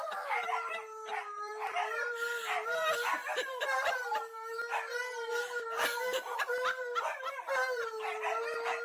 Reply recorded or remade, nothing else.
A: remade